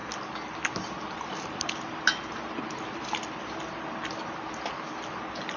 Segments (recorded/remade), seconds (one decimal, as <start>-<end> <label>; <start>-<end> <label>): 0.0-5.6 recorded